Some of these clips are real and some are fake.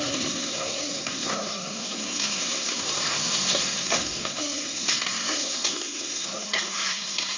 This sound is fake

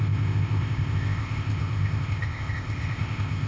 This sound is fake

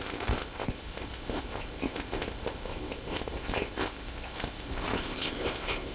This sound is fake